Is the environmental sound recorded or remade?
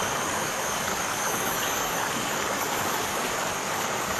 remade